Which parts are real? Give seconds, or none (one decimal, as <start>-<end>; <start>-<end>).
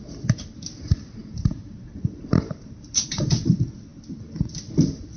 0.0-1.2; 3.3-5.2